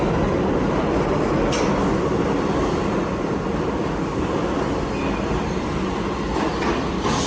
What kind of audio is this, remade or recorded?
recorded